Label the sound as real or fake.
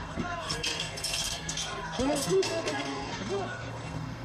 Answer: fake